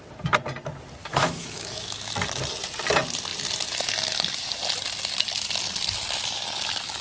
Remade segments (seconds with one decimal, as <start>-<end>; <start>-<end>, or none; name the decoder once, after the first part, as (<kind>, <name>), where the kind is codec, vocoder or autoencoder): 1.0-2.1 (autoencoder, DAC-VAE)

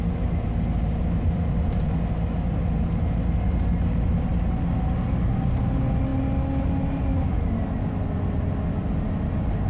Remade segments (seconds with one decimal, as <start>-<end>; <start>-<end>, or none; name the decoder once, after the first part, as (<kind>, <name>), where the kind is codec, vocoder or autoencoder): none